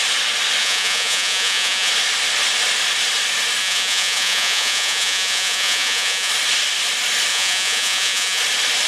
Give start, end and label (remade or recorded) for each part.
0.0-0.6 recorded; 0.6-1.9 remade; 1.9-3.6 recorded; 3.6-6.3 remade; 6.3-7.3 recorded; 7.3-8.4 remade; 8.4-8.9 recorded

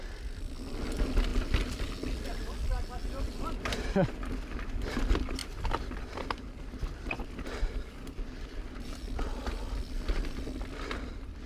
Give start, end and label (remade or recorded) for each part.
0.0-11.5 recorded